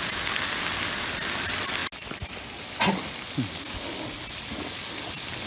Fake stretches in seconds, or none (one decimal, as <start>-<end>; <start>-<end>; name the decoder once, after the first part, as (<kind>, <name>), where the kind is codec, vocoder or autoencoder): none